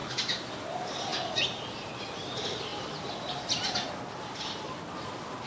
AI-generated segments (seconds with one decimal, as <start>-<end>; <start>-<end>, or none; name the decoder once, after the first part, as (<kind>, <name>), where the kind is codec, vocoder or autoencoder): none